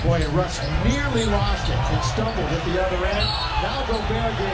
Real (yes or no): yes